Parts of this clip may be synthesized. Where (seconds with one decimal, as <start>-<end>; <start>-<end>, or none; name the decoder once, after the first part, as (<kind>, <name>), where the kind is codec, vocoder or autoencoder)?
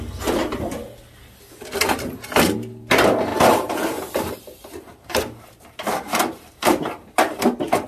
3.3-7.4 (vocoder, BigVGAN v2)